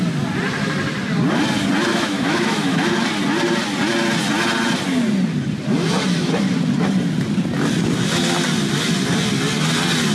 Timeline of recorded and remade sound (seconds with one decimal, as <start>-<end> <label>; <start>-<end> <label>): 0.0-1.9 recorded; 1.9-2.8 remade; 2.8-10.1 recorded

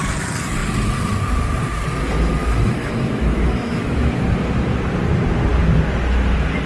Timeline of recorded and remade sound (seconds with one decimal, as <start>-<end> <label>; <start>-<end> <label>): 0.0-2.4 recorded; 2.4-4.2 remade; 4.2-6.7 recorded

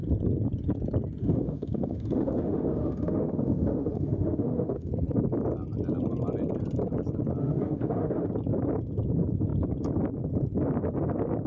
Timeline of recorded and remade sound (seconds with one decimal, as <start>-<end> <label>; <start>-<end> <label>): 0.0-1.2 recorded; 1.2-4.9 remade; 4.9-7.4 recorded; 7.4-8.3 remade; 8.3-11.5 recorded

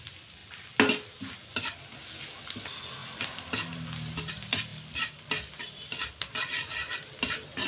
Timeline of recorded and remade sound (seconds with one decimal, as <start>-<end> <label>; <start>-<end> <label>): 0.0-7.7 recorded

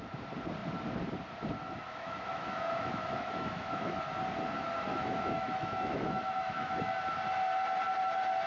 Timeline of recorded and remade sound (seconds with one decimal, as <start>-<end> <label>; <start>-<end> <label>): 0.0-1.9 recorded; 1.9-4.0 remade; 4.0-4.9 recorded; 4.9-7.0 remade; 7.0-8.5 recorded